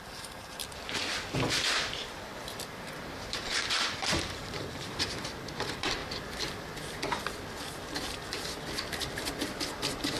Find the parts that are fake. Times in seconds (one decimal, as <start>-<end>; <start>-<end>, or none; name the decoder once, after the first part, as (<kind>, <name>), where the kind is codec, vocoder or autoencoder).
0.0-0.6 (vocoder, BigVGAN v2); 2.1-6.0